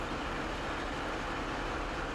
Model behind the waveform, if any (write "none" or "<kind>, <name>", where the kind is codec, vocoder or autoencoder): none